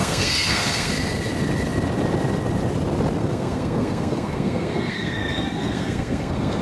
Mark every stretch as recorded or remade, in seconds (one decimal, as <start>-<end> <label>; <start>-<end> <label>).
0.0-0.9 remade; 0.9-3.2 recorded; 3.2-6.6 remade